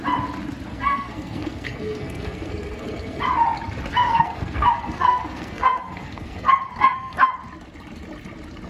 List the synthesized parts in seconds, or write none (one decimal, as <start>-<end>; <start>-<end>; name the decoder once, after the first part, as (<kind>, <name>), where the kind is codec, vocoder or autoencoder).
0.7-3.2 (codec, SNAC); 3.9-7.3